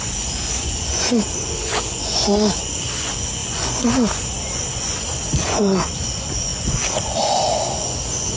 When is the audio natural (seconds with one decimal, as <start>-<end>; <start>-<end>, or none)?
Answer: none